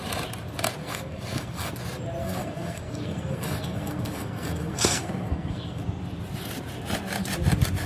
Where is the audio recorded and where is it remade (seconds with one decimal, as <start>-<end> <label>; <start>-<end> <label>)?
0.0-0.8 recorded; 0.8-1.7 remade; 1.7-2.2 recorded; 2.2-5.8 remade; 5.8-7.9 recorded

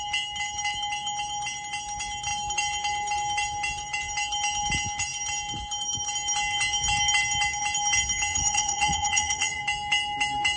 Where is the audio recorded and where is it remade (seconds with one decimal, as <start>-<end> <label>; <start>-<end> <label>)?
0.0-8.3 recorded; 8.3-9.6 remade; 9.6-10.6 recorded

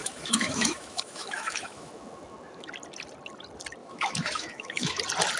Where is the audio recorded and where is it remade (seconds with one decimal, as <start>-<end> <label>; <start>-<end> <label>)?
0.0-1.9 remade; 1.9-3.8 recorded; 3.8-5.0 remade; 5.0-5.4 recorded

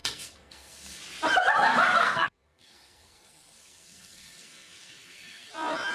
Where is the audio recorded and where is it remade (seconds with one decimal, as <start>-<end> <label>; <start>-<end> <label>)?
0.0-1.0 remade; 1.0-2.0 recorded; 2.0-5.5 remade; 5.5-5.9 recorded

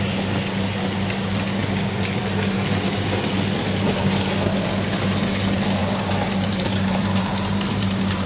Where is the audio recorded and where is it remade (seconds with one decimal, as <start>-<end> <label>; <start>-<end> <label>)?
0.0-5.8 recorded; 5.8-8.3 remade

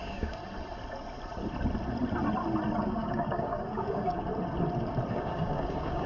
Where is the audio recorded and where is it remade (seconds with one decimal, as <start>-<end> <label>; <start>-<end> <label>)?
0.0-0.4 remade; 0.4-2.9 recorded; 2.9-4.3 remade; 4.3-5.1 recorded; 5.1-6.1 remade

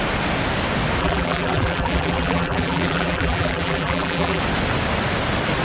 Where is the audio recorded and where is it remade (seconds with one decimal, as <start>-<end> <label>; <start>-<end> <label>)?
0.0-1.0 recorded; 1.0-4.4 remade; 4.4-5.6 recorded

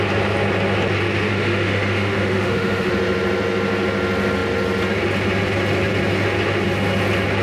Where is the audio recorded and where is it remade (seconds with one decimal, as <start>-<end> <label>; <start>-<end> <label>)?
0.0-1.3 recorded; 1.3-2.9 remade; 2.9-7.4 recorded